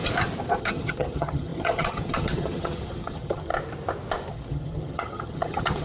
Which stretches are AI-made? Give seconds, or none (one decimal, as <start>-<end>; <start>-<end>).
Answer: 0.6-3.5; 4.3-5.8